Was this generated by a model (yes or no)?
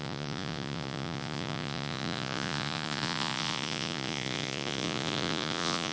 yes